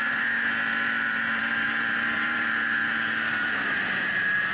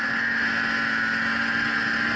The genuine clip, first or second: second